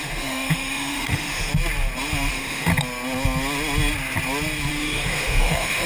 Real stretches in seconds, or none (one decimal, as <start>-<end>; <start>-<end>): 1.5-2.3; 2.7-4.7

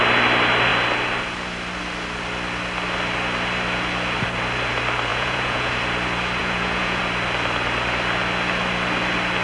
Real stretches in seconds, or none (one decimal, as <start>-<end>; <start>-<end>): 0.0-5.1; 5.7-6.4; 7.0-9.4

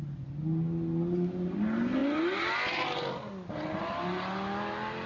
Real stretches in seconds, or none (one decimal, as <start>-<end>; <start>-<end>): 0.0-5.1

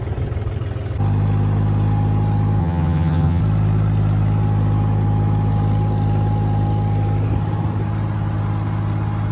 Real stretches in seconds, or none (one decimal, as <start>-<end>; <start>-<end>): 0.0-2.6; 3.4-9.3

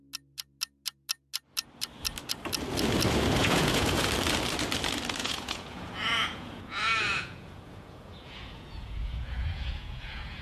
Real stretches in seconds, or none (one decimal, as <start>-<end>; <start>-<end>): 0.0-3.4; 4.1-5.2

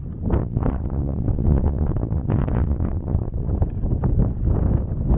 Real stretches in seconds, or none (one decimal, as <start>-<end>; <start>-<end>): 0.0-0.4; 3.5-5.2

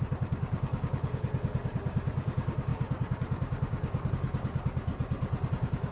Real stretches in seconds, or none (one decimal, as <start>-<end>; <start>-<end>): 4.9-5.5